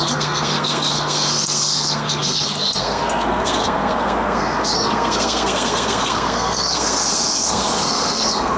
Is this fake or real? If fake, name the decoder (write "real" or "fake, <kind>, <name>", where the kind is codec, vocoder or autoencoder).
fake, codec, SNAC